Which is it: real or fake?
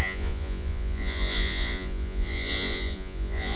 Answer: fake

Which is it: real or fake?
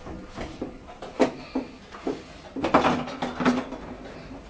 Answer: real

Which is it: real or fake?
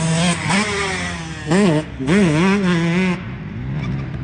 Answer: real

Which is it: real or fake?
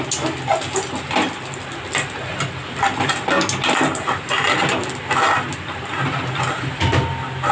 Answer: real